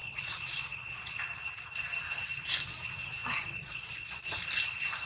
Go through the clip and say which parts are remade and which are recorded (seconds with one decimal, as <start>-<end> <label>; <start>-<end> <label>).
0.0-1.2 remade; 1.2-3.2 recorded; 3.2-4.3 remade; 4.3-5.1 recorded